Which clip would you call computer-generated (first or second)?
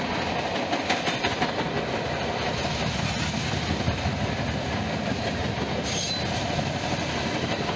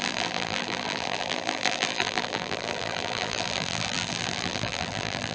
second